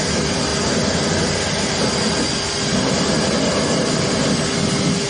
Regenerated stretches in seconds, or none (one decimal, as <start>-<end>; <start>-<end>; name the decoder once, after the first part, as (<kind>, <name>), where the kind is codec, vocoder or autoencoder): none